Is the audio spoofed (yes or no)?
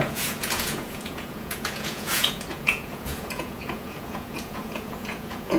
yes